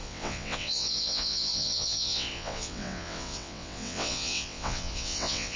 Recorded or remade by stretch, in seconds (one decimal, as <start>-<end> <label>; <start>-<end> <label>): 0.0-5.6 remade